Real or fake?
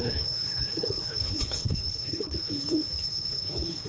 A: fake